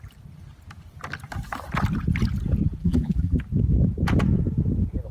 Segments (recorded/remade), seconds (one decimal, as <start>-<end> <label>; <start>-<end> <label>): 0.0-2.8 recorded; 2.8-3.4 remade; 3.4-5.1 recorded